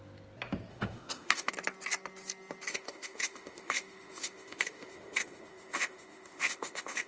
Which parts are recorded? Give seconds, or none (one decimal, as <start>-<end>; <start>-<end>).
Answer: 0.0-0.7; 1.5-2.7